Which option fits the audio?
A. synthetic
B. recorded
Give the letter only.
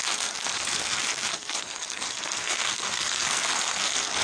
A